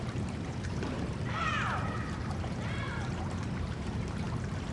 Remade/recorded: remade